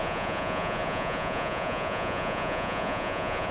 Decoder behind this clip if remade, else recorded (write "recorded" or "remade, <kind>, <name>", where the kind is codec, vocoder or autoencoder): remade, vocoder, Vocos